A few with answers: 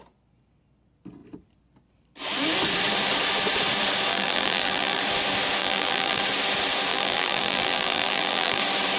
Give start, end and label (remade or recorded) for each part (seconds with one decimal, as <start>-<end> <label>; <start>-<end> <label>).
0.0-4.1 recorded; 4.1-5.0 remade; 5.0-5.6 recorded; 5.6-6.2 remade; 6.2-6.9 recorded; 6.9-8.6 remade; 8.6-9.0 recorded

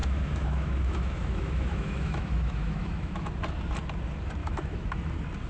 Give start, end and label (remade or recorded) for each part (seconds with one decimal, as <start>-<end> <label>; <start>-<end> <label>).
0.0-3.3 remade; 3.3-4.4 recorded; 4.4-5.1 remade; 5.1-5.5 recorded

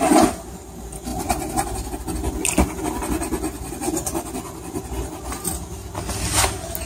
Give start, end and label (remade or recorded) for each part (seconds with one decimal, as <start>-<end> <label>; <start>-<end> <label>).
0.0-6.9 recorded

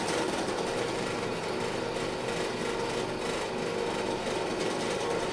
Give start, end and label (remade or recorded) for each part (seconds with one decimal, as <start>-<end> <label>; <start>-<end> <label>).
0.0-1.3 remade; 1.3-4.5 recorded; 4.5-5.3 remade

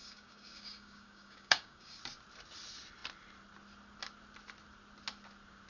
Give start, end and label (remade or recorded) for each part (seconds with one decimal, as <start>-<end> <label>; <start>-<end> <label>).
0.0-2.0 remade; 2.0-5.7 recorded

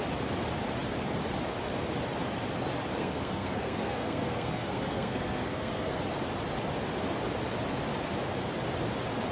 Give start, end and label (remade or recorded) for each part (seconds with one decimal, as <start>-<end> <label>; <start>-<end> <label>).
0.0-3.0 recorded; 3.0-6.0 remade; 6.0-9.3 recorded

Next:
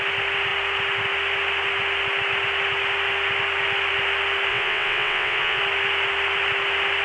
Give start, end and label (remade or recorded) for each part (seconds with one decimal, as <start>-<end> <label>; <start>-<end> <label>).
0.0-4.5 recorded; 4.5-5.6 remade; 5.6-7.0 recorded